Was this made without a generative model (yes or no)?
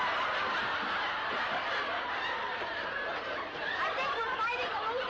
no